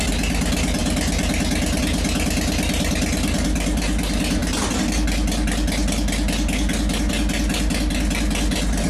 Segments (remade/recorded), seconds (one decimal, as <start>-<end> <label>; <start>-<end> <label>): 0.0-8.9 recorded

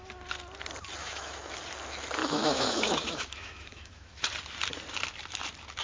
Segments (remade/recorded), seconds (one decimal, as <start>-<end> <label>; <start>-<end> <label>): 0.0-1.0 recorded; 1.0-1.5 remade; 1.5-2.2 recorded; 2.2-4.2 remade; 4.2-5.8 recorded

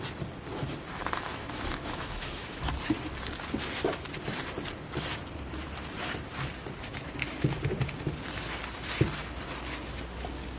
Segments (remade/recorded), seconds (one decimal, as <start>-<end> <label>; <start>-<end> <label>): 0.0-1.3 recorded; 1.3-2.7 remade; 2.7-10.6 recorded

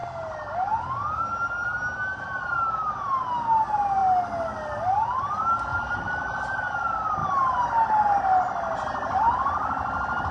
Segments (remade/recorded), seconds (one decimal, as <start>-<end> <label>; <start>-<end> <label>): 0.0-10.3 recorded

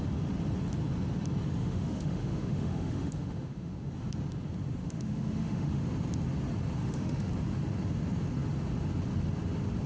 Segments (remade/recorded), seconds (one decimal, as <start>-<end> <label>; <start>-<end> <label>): 0.0-1.6 recorded; 1.6-3.9 remade; 3.9-4.8 recorded; 4.8-5.8 remade; 5.8-6.8 recorded; 6.8-7.3 remade; 7.3-9.9 recorded

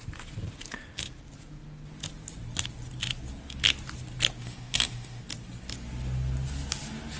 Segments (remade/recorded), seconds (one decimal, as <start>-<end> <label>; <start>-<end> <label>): 0.0-4.4 recorded; 4.4-5.2 remade; 5.2-7.2 recorded

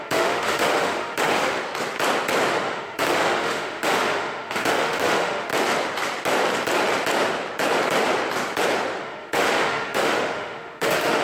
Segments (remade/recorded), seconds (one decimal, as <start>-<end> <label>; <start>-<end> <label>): 0.0-1.6 remade; 1.6-2.5 recorded; 2.5-5.5 remade; 5.5-9.0 recorded; 9.0-11.2 remade

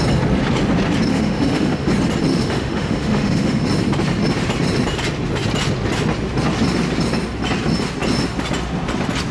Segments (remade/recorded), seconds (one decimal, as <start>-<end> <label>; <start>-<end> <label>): 0.0-1.1 recorded; 1.1-1.9 remade; 1.9-2.3 recorded; 2.3-3.6 remade; 3.6-9.3 recorded